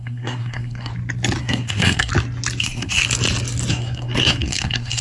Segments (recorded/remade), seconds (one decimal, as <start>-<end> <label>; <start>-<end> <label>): 0.0-0.9 remade; 0.9-1.4 recorded; 1.4-2.1 remade; 2.1-2.6 recorded; 2.6-3.0 remade; 3.0-3.7 recorded; 3.7-5.0 remade